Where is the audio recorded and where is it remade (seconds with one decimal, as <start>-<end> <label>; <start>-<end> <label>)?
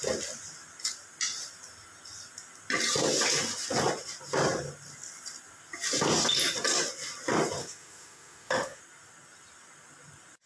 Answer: 0.0-7.6 recorded; 7.6-8.8 remade; 8.8-10.5 recorded